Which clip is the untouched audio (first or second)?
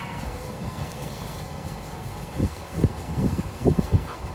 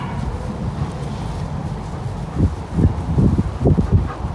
second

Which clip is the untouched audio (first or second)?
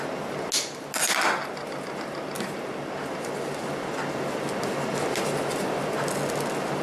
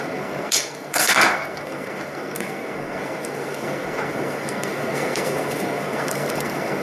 first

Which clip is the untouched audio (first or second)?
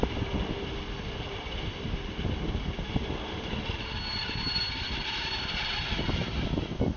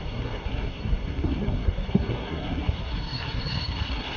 first